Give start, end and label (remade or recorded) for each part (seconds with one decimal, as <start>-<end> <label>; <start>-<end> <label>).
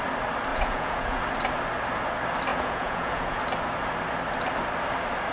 0.0-0.5 recorded; 0.5-1.2 remade; 1.2-2.5 recorded; 2.5-3.4 remade; 3.4-5.3 recorded